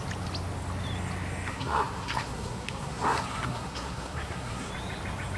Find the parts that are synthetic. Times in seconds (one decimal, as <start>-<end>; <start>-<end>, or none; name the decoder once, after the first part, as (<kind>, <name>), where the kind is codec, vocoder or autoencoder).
1.5-4.7 (codec, SNAC)